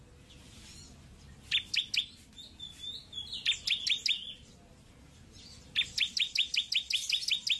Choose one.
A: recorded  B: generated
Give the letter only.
A